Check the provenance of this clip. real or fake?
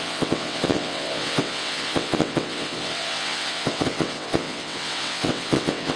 fake